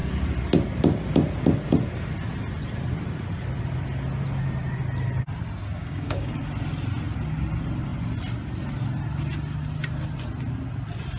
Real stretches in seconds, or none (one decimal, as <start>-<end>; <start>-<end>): 0.0-5.8; 6.5-11.2